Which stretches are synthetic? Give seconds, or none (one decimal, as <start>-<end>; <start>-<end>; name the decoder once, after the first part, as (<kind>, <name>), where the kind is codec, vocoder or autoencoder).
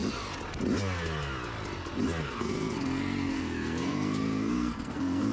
2.2-5.3 (codec, SNAC)